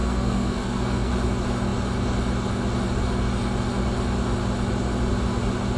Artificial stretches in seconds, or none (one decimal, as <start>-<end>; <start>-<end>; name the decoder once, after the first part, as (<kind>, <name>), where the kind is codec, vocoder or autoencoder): 0.0-1.1 (codec, SNAC)